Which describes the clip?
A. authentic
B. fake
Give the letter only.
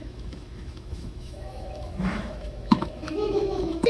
B